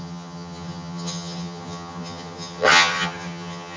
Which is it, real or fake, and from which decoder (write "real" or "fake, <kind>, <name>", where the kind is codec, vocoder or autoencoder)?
fake, vocoder, HiFi-GAN